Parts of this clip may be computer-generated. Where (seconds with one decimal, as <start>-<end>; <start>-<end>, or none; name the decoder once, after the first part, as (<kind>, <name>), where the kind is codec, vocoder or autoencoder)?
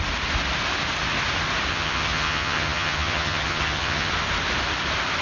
1.7-4.1 (vocoder, HiFi-GAN)